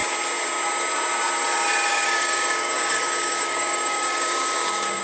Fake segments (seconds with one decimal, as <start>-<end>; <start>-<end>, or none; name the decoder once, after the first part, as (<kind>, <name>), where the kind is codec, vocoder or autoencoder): 1.9-5.0 (codec, DAC)

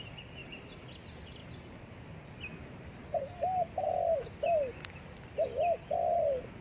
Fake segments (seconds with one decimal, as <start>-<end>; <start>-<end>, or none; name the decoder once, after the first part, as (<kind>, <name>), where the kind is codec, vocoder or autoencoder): 0.4-0.9 (vocoder, BigVGAN v2)